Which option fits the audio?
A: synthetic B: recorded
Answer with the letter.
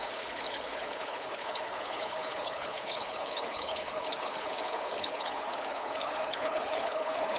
A